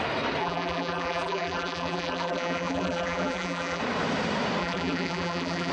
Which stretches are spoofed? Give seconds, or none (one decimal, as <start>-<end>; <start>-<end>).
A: 0.4-3.8; 4.6-5.7